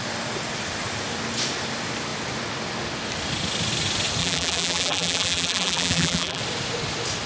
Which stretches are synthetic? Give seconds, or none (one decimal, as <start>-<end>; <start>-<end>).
4.2-6.4